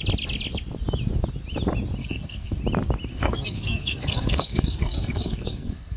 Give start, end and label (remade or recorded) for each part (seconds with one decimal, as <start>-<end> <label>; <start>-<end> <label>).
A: 0.0-2.0 recorded; 2.0-2.6 remade; 2.6-3.1 recorded; 3.1-6.0 remade